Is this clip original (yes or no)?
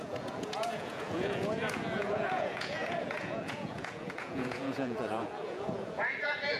no